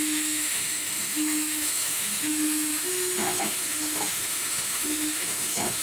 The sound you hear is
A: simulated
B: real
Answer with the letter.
A